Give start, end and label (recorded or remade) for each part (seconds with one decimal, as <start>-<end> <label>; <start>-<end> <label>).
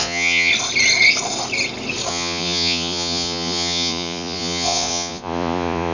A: 0.0-0.5 remade; 0.5-2.1 recorded; 2.1-5.9 remade